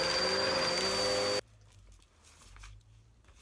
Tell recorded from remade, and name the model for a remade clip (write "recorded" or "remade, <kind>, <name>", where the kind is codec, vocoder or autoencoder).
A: recorded